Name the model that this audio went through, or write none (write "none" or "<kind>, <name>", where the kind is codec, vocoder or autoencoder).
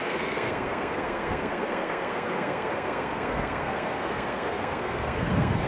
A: codec, SNAC